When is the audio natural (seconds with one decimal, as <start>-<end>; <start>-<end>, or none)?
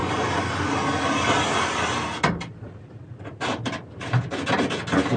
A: 0.0-5.2